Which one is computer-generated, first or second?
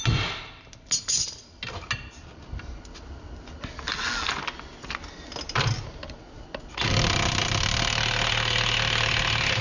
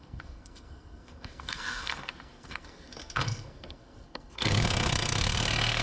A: second